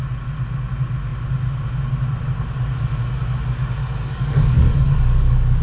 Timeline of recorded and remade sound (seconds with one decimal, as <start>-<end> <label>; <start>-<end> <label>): 0.0-3.8 recorded; 3.8-5.6 remade